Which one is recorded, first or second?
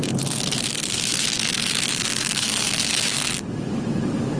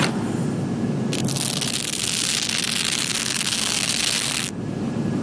second